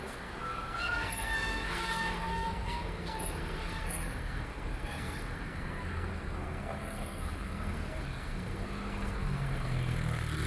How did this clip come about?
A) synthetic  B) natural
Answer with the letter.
A